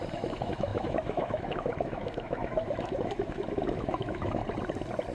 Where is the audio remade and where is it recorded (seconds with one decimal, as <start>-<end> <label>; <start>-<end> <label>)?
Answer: 0.0-4.4 remade; 4.4-5.1 recorded